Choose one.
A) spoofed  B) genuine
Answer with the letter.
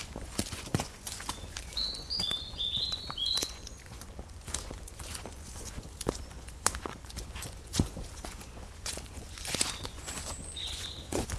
A